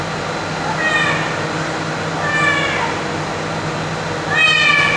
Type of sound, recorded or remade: recorded